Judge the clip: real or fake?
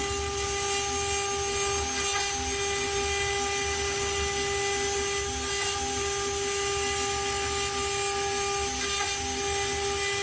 real